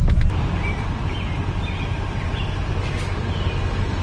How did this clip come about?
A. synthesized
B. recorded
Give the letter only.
B